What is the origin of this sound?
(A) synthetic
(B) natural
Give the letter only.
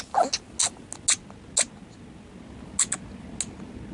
B